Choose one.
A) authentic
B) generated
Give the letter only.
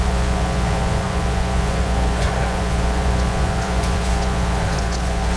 B